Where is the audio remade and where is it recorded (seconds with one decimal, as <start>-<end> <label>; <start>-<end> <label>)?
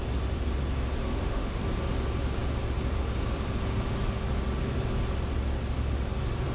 0.0-1.0 recorded; 1.0-1.6 remade; 1.6-6.5 recorded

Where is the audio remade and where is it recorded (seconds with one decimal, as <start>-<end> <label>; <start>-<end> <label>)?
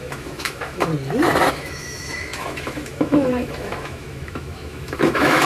0.0-0.9 remade; 0.9-1.5 recorded; 1.5-5.4 remade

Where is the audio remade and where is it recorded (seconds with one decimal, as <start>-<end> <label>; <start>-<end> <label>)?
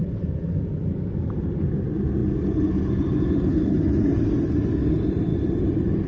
0.0-5.3 recorded; 5.3-6.1 remade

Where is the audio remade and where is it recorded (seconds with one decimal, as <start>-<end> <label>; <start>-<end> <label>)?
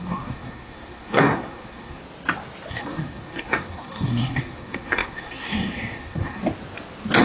0.0-2.0 remade; 2.0-2.7 recorded; 2.7-6.4 remade; 6.4-7.2 recorded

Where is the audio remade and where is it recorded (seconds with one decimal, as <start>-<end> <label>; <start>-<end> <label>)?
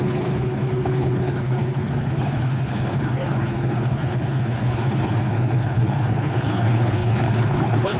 0.0-8.0 remade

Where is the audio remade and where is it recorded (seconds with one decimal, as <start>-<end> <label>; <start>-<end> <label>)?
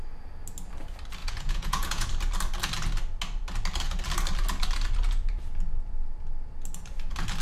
0.0-1.2 recorded; 1.2-2.1 remade; 2.1-7.4 recorded